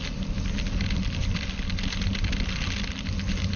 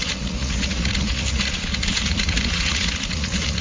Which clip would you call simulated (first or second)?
second